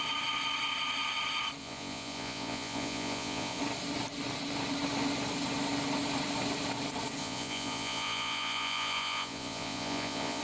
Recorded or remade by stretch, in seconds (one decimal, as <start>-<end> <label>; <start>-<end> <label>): 0.0-1.6 recorded; 1.6-3.6 remade; 3.6-7.2 recorded; 7.2-10.4 remade